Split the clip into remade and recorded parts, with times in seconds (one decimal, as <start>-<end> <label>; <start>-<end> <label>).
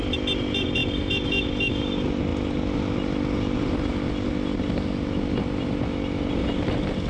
0.0-7.1 recorded